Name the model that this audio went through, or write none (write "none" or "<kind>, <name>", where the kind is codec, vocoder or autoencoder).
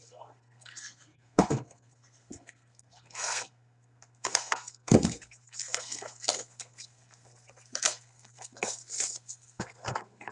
codec, SNAC